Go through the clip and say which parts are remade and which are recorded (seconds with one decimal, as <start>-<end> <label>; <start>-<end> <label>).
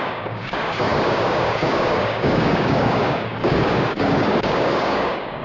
0.0-5.4 remade